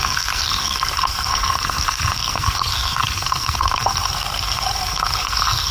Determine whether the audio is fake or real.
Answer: fake